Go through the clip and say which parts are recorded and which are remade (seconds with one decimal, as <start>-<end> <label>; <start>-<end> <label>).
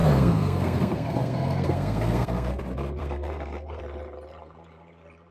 0.0-2.6 remade; 2.6-3.0 recorded; 3.0-3.8 remade; 3.8-5.3 recorded